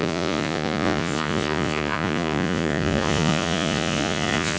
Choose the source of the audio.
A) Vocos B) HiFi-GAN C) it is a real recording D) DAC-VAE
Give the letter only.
A